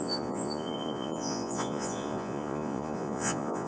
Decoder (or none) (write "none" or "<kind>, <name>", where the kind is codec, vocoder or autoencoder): vocoder, Vocos